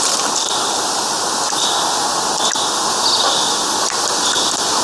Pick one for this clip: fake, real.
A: real